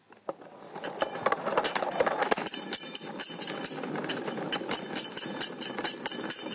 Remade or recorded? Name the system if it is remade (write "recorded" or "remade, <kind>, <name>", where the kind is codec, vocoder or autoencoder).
recorded